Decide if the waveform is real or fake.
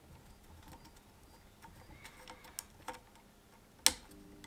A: real